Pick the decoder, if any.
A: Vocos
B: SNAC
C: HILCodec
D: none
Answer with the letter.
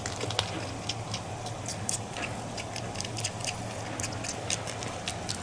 D